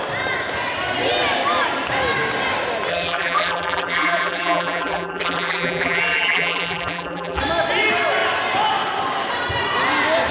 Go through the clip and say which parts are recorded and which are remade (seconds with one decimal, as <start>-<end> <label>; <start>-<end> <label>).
0.0-2.9 recorded; 2.9-7.4 remade; 7.4-10.3 recorded